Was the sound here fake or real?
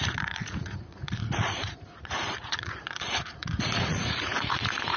fake